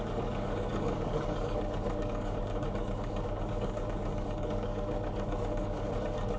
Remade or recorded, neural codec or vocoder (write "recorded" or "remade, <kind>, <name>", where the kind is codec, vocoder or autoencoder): remade, codec, DAC